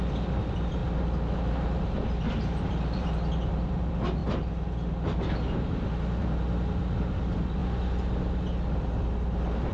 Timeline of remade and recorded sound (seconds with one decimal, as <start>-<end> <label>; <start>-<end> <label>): 0.0-0.8 remade; 0.8-1.5 recorded; 1.5-4.2 remade; 4.2-6.2 recorded; 6.2-7.6 remade; 7.6-9.7 recorded